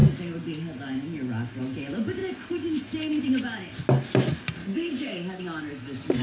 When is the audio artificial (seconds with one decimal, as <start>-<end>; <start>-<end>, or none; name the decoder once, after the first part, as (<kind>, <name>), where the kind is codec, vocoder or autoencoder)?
4.6-5.4 (codec, DAC)